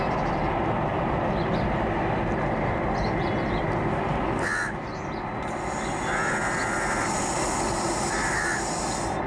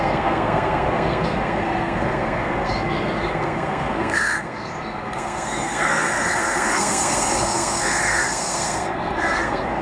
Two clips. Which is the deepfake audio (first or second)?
second